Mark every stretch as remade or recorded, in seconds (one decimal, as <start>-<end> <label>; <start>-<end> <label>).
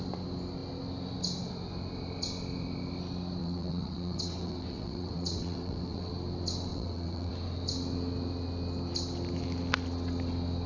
0.0-3.4 recorded; 3.4-6.1 remade; 6.1-6.7 recorded; 6.7-7.3 remade; 7.3-10.7 recorded